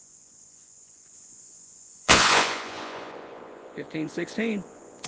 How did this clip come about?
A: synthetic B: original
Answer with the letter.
A